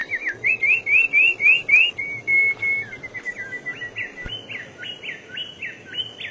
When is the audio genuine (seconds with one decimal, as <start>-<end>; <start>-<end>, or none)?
0.0-6.3